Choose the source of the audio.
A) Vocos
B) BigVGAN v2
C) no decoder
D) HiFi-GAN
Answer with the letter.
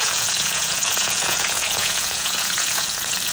A